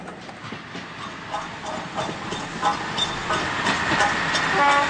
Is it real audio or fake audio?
real